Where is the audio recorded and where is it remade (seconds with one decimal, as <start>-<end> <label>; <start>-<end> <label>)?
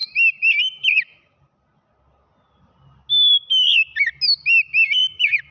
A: 0.0-5.5 recorded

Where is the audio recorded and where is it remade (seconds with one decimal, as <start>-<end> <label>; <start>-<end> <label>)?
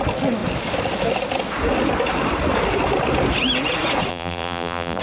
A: 0.0-4.1 recorded; 4.1-5.0 remade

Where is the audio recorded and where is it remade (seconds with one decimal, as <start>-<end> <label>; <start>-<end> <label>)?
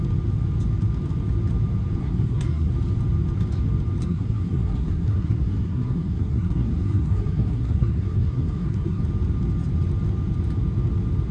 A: 0.0-2.0 recorded; 2.0-2.7 remade; 2.7-4.0 recorded; 4.0-9.0 remade; 9.0-11.3 recorded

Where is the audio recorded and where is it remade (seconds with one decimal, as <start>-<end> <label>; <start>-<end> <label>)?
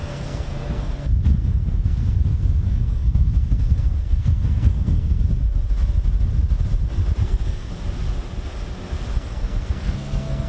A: 0.0-5.2 remade; 5.2-7.2 recorded; 7.2-7.7 remade; 7.7-9.1 recorded; 9.1-10.5 remade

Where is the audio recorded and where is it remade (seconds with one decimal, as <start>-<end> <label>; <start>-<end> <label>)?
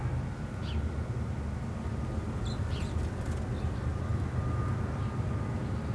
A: 0.0-5.9 recorded